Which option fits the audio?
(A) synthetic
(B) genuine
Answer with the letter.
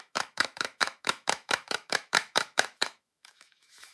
A